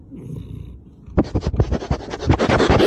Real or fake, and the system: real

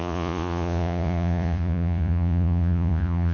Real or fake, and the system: fake, vocoder, Vocos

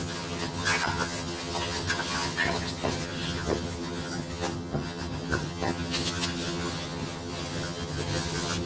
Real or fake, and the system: fake, vocoder, HiFi-GAN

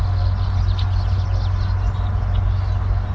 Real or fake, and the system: real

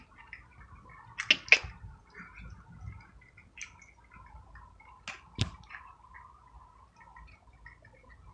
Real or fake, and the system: real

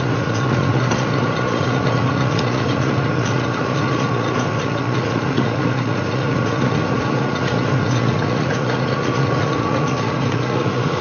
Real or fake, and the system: fake, vocoder, Vocos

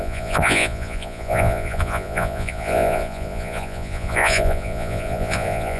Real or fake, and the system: fake, vocoder, Vocos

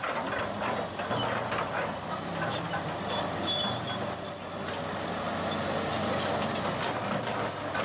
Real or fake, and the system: real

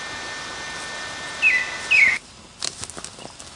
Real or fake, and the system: real